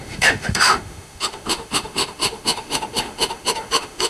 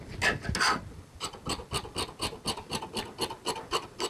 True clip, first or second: second